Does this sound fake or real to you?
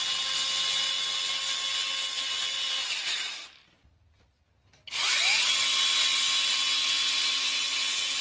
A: real